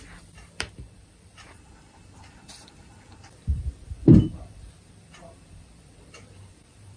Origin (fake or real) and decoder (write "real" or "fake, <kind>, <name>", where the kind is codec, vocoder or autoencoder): fake, vocoder, BigVGAN v2